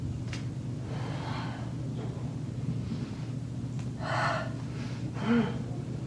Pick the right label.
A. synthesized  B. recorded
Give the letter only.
B